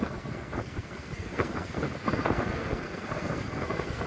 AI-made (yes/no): yes